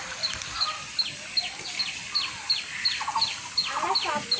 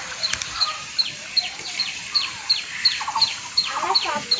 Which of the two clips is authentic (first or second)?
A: first